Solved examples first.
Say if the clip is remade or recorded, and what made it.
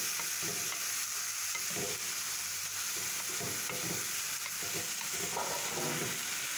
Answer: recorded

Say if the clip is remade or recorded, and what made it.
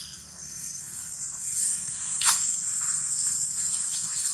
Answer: remade, codec, SNAC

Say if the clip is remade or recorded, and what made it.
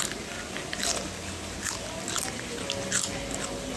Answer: recorded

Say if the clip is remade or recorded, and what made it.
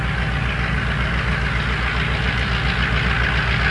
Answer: recorded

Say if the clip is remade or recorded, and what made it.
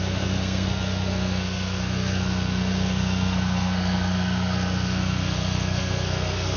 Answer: remade, codec, SNAC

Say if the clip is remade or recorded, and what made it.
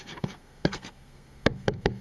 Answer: remade, codec, SNAC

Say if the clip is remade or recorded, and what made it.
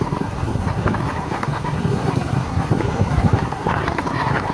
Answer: remade, codec, SNAC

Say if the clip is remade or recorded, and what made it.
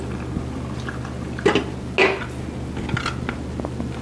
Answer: recorded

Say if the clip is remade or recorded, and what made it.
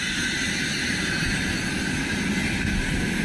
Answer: recorded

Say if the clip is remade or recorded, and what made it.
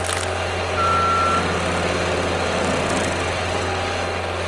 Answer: recorded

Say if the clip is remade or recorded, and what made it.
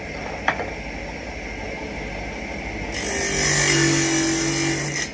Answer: recorded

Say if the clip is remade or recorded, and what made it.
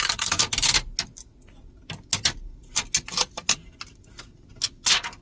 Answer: recorded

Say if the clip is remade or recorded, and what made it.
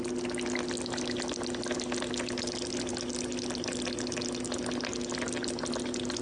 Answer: recorded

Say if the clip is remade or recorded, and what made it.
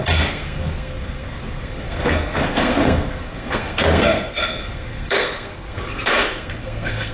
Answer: remade, codec, SNAC